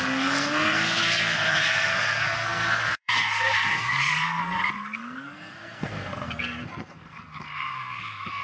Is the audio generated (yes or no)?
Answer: yes